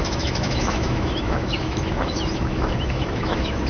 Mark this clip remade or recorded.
remade